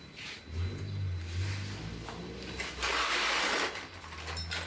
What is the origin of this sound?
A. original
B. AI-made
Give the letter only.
A